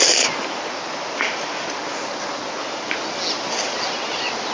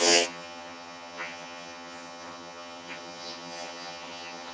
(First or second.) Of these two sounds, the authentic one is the first